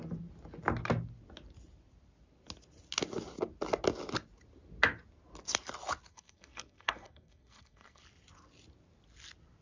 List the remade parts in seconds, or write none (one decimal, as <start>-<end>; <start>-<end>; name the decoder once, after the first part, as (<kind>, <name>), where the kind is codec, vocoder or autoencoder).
6.1-8.0 (codec, SNAC)